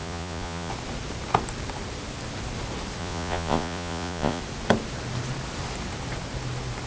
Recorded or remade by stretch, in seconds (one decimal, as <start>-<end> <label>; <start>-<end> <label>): 0.0-0.7 remade; 0.7-3.0 recorded; 3.0-4.4 remade; 4.4-6.9 recorded